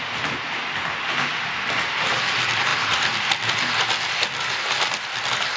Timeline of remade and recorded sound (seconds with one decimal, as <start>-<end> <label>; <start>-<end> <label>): 0.0-5.6 recorded